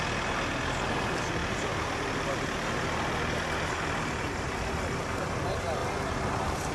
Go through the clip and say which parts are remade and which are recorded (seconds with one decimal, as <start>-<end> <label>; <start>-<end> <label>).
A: 0.0-6.7 recorded